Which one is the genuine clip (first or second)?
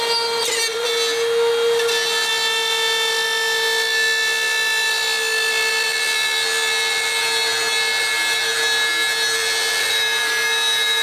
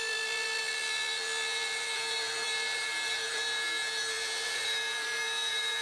first